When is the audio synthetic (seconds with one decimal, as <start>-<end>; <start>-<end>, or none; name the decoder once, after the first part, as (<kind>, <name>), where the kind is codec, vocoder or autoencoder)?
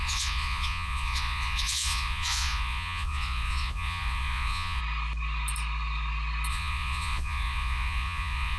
0.0-4.8 (vocoder, Vocos); 6.5-8.6